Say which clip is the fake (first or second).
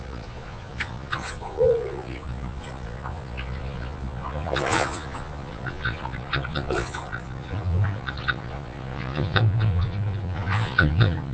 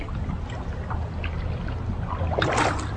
first